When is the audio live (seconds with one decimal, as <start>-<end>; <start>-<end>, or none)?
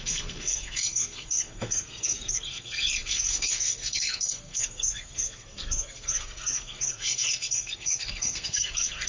none